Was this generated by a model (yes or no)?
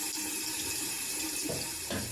yes